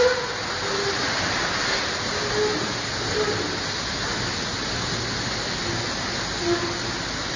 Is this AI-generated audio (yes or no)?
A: no